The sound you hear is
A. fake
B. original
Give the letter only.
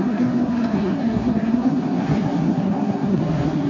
A